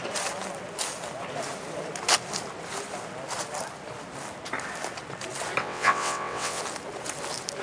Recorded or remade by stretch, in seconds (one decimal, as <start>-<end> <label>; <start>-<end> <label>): 0.0-5.6 recorded; 5.6-6.6 remade; 6.6-7.6 recorded